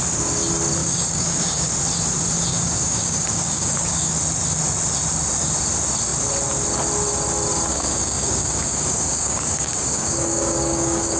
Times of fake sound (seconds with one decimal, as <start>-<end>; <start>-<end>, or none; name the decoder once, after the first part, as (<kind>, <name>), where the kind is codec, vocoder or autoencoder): 0.8-1.7 (codec, DAC); 2.5-4.1; 7.7-11.2